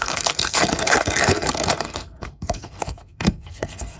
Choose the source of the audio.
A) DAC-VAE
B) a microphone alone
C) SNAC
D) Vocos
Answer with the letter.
C